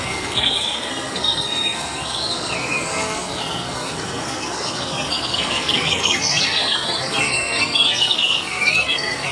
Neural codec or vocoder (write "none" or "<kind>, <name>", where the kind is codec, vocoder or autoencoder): codec, SNAC